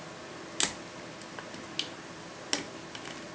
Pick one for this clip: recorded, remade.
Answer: recorded